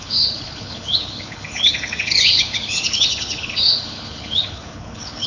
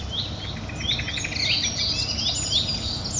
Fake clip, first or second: first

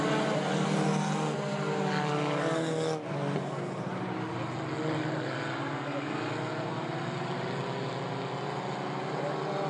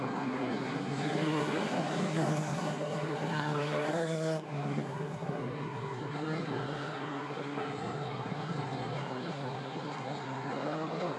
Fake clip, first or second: second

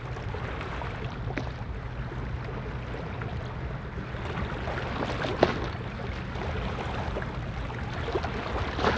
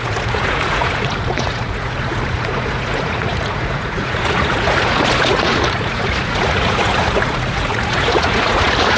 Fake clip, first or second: second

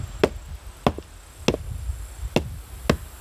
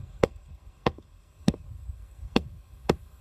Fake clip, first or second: second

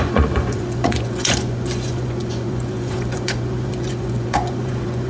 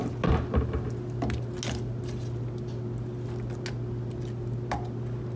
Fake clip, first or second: first